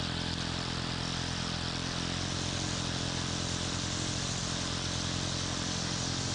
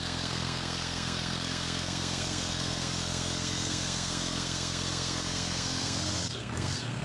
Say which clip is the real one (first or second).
first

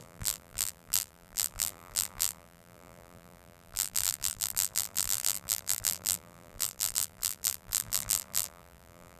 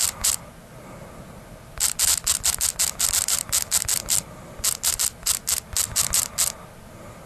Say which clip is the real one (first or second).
second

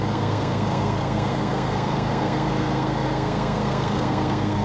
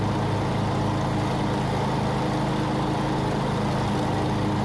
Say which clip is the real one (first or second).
second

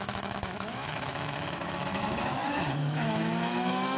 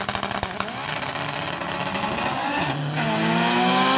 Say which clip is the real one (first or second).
second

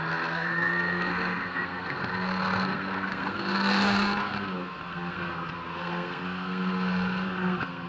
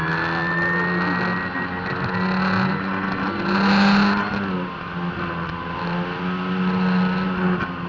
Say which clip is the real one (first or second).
second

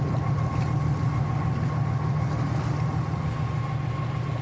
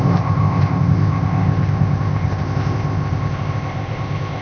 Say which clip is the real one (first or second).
first